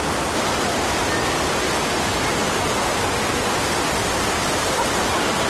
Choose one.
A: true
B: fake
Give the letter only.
A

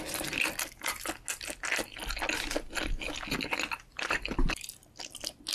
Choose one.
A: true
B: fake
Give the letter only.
A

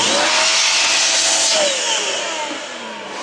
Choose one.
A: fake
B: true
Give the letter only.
B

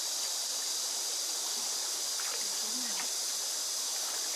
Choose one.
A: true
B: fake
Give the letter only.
A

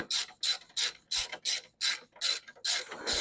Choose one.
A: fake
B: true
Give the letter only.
B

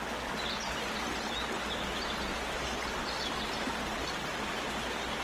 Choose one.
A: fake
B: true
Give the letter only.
B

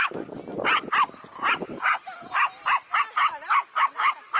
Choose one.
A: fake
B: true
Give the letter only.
B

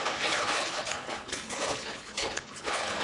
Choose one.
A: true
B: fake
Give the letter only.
B